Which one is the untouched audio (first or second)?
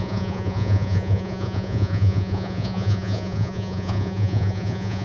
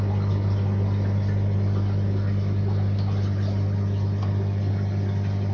second